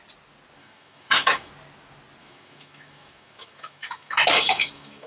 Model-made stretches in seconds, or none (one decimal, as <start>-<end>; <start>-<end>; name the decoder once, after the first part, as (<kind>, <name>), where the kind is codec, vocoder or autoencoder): 0.6-1.5 (autoencoder, DAC-VAE); 2.2-5.1